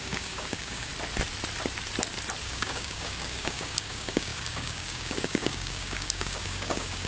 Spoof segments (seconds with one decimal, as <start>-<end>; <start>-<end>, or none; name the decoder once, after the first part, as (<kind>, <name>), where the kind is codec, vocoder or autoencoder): 0.0-0.9 (codec, DAC); 2.4-7.1